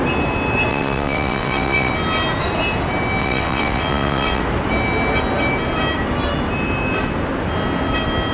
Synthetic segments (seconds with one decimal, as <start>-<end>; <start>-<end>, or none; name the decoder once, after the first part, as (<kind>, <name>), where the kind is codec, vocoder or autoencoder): 0.7-1.9 (vocoder, WaveNeXt); 3.2-4.4